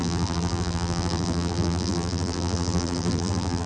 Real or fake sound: fake